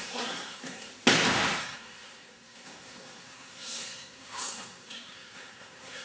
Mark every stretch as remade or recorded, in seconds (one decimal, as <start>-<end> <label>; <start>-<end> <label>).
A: 0.0-0.9 remade; 0.9-1.6 recorded; 1.6-6.0 remade